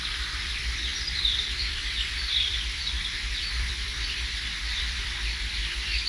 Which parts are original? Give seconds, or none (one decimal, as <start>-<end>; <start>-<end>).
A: none